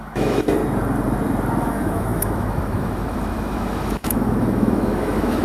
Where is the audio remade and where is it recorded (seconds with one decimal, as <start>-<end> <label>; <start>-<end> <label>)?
0.0-0.6 remade; 0.6-1.6 recorded; 1.6-5.4 remade